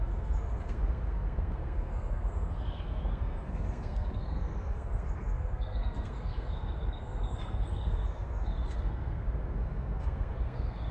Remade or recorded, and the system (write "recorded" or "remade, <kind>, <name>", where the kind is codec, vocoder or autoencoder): remade, codec, SNAC